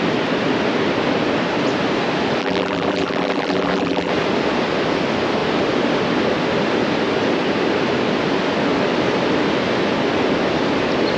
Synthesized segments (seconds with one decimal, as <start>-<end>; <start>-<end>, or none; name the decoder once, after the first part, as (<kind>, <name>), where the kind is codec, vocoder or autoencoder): 2.4-4.1 (vocoder, BigVGAN v2)